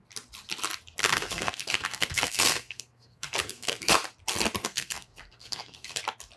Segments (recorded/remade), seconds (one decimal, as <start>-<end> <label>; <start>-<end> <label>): 0.0-1.0 recorded; 1.0-3.9 remade; 3.9-4.6 recorded; 4.6-6.0 remade; 6.0-6.4 recorded